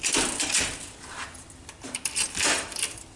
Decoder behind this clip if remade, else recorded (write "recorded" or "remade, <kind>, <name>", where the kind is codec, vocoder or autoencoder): remade, vocoder, BigVGAN v2